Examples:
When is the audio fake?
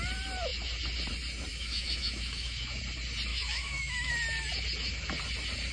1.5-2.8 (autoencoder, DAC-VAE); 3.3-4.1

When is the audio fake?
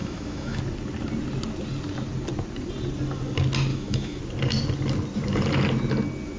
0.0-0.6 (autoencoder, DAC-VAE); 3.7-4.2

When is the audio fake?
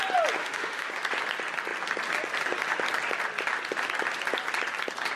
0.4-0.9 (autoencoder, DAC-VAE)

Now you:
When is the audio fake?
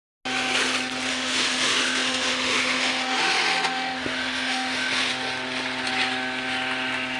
1.1-5.1 (autoencoder, DAC-VAE)